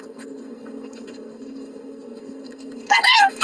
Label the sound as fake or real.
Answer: fake